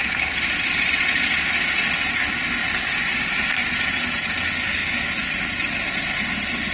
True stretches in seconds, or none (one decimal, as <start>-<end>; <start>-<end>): 0.5-2.6; 3.9-4.8; 5.4-6.7